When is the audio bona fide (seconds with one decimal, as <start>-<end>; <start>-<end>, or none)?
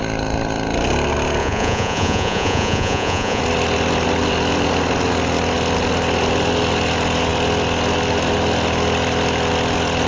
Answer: 0.0-1.4; 3.4-10.1